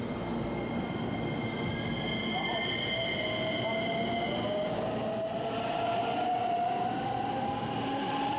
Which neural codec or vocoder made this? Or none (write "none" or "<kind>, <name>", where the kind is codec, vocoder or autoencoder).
none